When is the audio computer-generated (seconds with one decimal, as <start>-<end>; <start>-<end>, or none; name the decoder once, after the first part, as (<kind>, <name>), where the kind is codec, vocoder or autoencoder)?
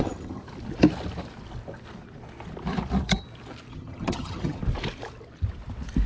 0.0-0.4 (vocoder, HiFi-GAN); 3.7-4.6